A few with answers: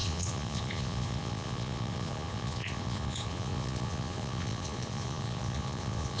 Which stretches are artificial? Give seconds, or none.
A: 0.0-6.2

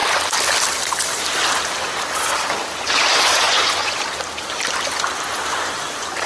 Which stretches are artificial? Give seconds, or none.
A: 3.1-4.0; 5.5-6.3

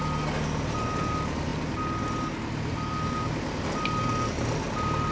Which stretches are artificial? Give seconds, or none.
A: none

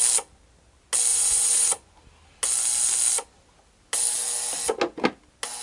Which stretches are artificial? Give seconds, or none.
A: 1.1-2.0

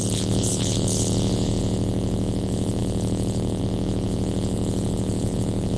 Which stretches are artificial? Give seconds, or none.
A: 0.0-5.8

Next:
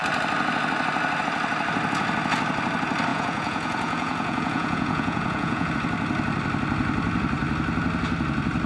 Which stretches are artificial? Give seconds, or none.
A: 3.1-5.7

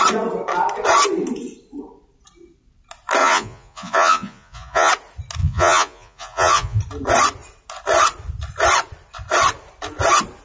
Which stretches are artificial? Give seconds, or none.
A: 3.2-4.9; 5.4-6.8